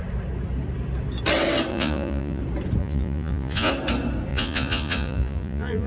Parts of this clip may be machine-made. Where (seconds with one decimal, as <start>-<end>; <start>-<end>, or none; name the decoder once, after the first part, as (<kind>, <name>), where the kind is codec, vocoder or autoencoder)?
1.7-2.4 (vocoder, Vocos); 2.8-3.7; 4.3-5.9